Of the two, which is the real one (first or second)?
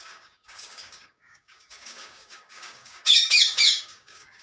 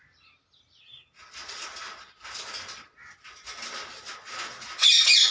second